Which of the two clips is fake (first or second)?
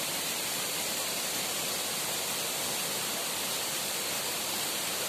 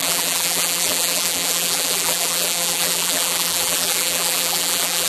second